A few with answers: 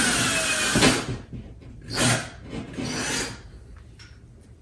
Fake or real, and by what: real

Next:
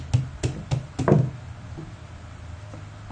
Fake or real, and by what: real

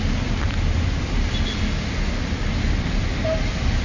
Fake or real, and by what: real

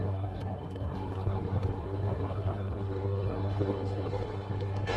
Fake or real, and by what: fake, codec, SNAC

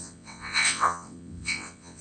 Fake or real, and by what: fake, vocoder, WaveNeXt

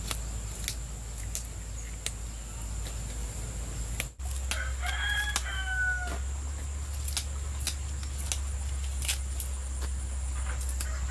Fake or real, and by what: real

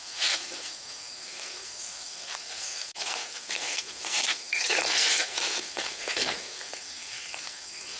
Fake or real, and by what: fake, codec, SNAC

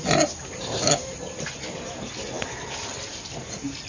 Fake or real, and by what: real